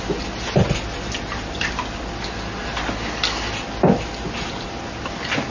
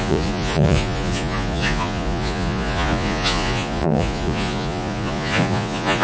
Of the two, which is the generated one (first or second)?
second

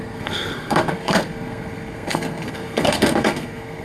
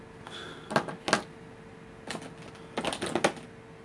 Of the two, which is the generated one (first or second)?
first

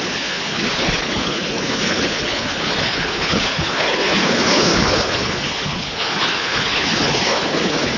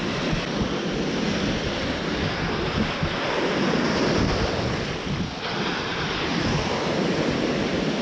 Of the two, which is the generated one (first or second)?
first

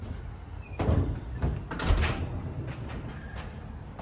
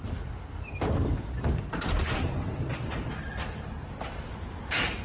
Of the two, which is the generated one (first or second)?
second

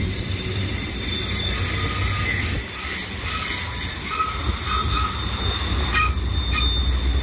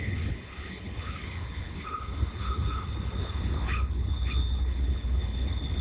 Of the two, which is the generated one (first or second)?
second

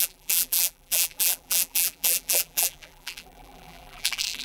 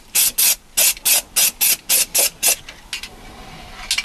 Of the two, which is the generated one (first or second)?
first